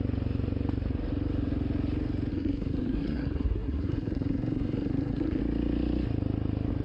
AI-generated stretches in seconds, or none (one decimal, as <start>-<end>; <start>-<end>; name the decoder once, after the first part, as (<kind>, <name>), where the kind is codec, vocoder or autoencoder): 2.3-5.4 (codec, SNAC)